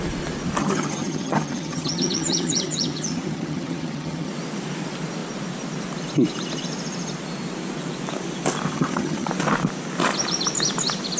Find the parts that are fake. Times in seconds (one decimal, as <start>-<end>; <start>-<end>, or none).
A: 0.6-4.3; 8.7-9.3